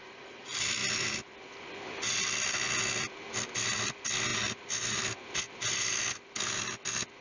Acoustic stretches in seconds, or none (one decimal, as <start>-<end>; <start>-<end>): 0.0-7.2